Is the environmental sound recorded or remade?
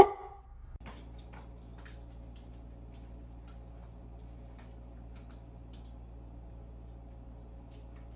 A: recorded